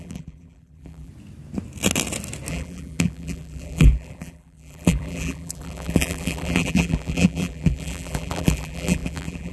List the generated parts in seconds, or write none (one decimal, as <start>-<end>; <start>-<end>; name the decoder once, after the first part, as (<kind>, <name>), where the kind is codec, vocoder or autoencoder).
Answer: 0.0-1.1 (vocoder, BigVGAN v2); 2.5-9.5